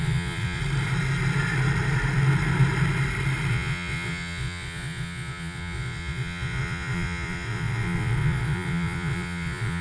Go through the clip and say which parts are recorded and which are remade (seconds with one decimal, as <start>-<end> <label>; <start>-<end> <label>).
0.0-0.6 remade; 0.6-3.5 recorded; 3.5-9.8 remade